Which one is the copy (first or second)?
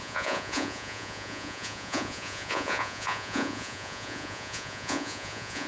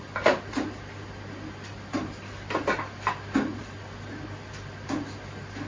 first